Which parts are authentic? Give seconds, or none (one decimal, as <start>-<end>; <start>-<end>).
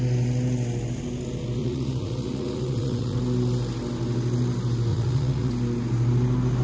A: 0.0-1.6; 3.2-4.9; 5.5-6.6